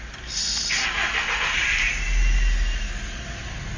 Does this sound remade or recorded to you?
recorded